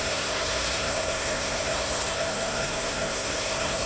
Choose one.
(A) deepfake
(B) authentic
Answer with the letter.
A